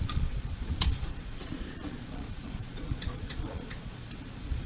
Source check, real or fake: fake